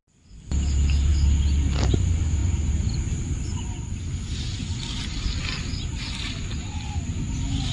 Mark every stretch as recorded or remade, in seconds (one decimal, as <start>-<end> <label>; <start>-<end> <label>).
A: 0.0-7.7 recorded